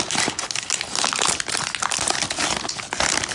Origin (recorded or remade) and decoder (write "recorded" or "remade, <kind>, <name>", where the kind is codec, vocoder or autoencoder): recorded